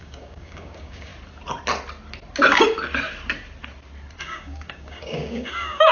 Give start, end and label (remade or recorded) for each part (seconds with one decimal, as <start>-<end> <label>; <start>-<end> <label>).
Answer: 0.0-1.1 remade; 1.1-4.2 recorded; 4.2-5.9 remade